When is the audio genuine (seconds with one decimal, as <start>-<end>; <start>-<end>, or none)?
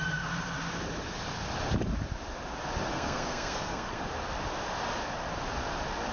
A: 0.0-2.9; 4.0-6.1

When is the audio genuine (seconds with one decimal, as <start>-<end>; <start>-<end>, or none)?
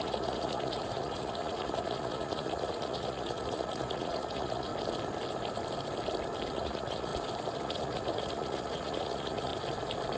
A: 4.7-6.5; 7.1-7.6; 9.5-10.2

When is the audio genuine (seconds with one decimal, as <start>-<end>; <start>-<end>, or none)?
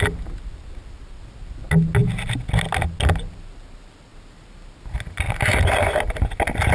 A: 0.0-6.7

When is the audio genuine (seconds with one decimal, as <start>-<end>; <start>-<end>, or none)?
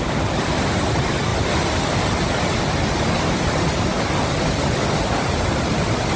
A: 0.0-6.2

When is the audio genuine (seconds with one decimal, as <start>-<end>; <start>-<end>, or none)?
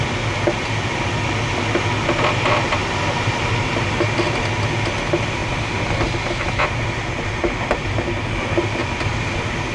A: 0.0-9.7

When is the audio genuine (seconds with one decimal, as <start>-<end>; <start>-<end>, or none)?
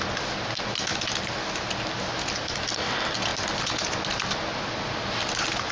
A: 0.0-5.7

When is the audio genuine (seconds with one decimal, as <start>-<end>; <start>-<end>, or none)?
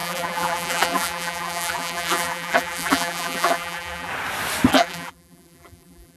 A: 4.1-4.7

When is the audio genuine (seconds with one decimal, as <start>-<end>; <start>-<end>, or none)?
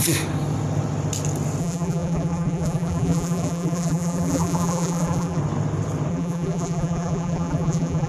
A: 0.0-1.6; 5.4-6.1